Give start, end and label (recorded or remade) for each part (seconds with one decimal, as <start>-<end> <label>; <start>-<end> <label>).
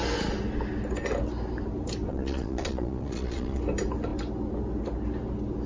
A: 0.0-2.1 recorded; 2.1-3.6 remade; 3.6-5.7 recorded